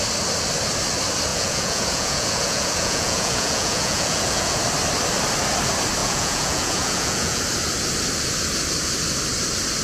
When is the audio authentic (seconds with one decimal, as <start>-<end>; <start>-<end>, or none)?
0.0-1.3; 4.6-6.0; 7.4-9.8